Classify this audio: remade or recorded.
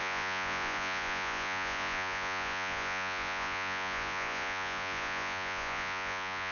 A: remade